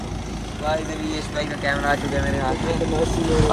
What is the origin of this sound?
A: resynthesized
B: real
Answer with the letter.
B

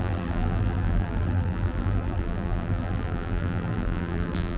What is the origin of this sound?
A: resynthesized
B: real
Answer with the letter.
A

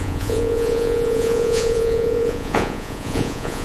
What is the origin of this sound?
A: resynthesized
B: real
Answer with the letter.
A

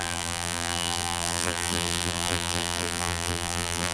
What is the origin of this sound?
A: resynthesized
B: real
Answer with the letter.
A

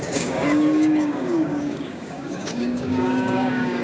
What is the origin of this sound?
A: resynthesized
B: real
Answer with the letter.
A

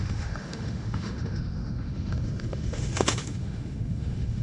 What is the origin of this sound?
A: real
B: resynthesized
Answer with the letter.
B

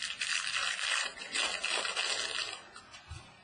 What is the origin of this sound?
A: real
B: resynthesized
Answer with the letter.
A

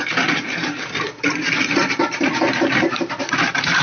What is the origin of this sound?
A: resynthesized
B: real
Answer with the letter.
A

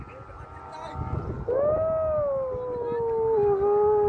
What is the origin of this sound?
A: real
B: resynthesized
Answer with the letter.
A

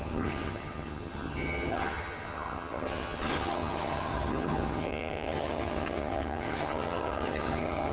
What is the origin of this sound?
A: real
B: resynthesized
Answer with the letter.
B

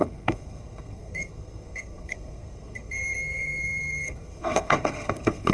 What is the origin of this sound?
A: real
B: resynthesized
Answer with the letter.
B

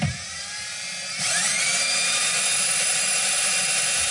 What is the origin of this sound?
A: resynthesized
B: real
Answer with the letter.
A